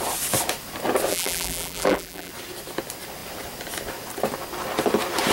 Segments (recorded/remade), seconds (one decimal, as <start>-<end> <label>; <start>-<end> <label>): 0.0-1.1 recorded; 1.1-2.3 remade; 2.3-5.3 recorded